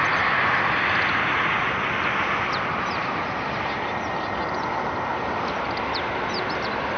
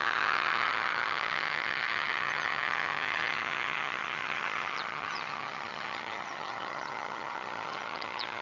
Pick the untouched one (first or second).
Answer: first